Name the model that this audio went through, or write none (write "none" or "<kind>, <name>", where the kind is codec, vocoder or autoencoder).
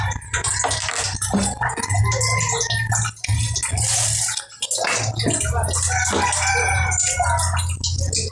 none